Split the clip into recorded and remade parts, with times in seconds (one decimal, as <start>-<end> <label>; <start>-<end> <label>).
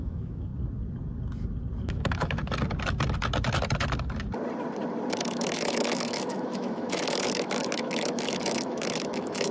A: 0.0-0.5 remade; 0.5-1.9 recorded; 1.9-2.4 remade; 2.4-5.2 recorded; 5.2-9.5 remade